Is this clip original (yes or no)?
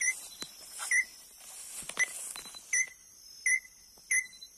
yes